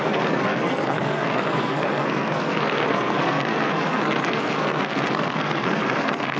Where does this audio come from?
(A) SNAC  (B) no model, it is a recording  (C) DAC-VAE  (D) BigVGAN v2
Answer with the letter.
A